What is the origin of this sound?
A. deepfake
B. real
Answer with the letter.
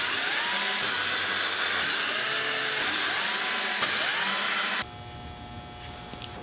B